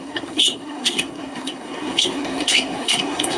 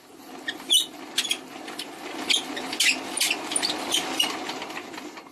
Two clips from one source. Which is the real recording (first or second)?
second